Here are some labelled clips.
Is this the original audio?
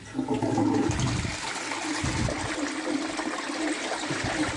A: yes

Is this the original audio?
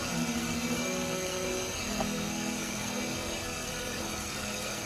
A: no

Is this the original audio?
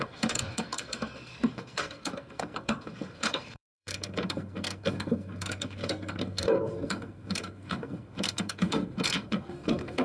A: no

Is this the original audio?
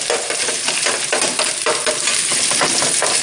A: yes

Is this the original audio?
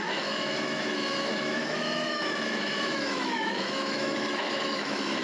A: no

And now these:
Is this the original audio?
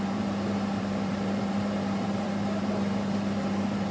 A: no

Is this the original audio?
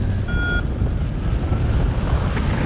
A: yes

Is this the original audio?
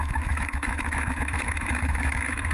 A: no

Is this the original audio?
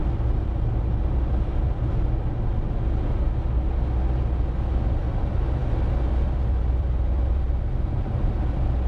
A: yes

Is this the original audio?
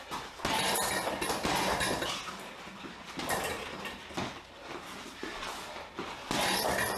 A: yes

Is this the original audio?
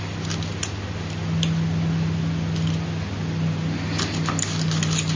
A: yes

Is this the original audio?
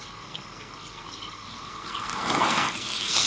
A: no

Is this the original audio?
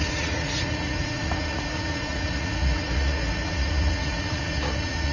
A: no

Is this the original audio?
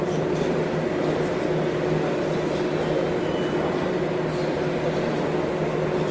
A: yes